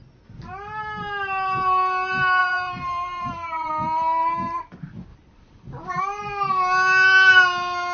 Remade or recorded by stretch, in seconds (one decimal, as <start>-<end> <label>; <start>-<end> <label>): 0.0-2.4 recorded; 2.4-3.7 remade; 3.7-5.1 recorded; 5.1-6.0 remade; 6.0-7.9 recorded